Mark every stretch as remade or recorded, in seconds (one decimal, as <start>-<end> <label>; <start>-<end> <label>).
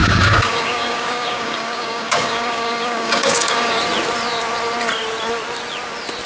0.0-3.8 remade; 3.8-6.3 recorded